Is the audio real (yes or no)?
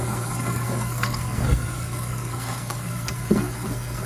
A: no